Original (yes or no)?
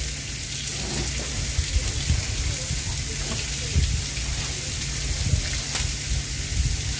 yes